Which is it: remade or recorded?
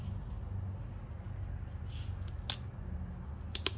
recorded